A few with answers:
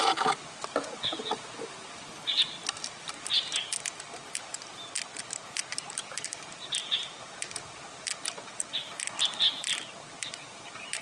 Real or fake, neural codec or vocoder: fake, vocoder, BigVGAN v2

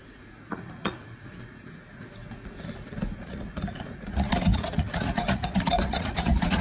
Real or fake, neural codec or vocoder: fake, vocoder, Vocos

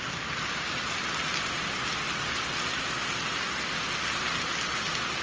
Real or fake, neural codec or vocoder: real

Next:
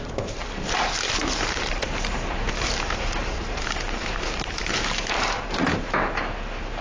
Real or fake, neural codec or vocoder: fake, vocoder, BigVGAN v2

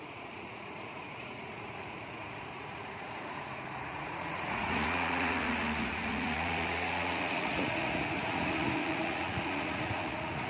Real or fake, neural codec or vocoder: fake, vocoder, Vocos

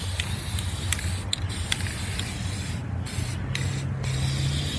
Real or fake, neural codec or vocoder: real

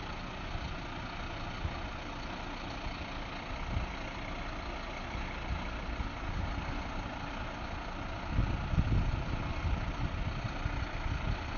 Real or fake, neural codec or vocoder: real